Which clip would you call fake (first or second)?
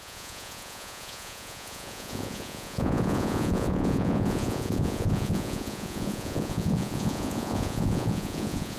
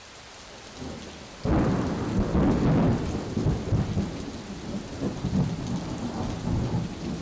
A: first